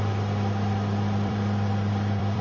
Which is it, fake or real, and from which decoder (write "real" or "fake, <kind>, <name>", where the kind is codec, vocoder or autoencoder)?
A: fake, vocoder, BigVGAN v2